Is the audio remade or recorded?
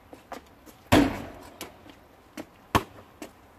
recorded